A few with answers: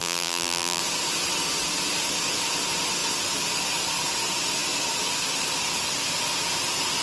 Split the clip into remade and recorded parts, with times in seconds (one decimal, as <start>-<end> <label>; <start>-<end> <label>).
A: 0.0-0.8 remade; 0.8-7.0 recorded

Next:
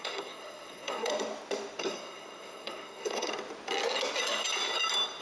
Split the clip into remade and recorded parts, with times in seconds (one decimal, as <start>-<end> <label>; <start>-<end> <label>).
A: 0.0-1.1 remade; 1.1-1.8 recorded; 1.8-3.3 remade; 3.3-5.2 recorded

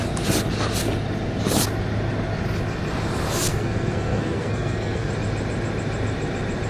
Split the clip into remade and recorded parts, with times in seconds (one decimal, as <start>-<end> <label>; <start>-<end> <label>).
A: 0.0-3.5 recorded; 3.5-5.1 remade; 5.1-6.7 recorded

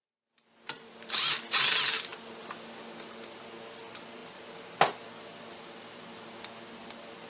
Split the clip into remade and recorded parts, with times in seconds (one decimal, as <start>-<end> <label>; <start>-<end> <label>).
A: 0.0-7.3 recorded

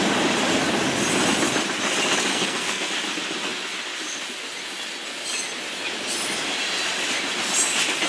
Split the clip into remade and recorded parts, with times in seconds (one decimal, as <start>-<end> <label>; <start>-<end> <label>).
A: 0.0-2.3 recorded; 2.3-2.9 remade; 2.9-8.1 recorded

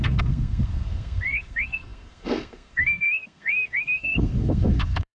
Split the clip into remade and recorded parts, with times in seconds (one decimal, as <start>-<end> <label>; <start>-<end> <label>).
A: 0.0-5.1 remade